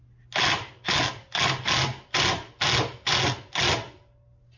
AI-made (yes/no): no